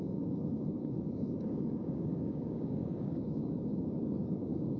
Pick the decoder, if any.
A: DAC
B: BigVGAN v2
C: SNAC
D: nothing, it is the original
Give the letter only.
A